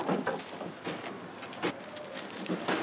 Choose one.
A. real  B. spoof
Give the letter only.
A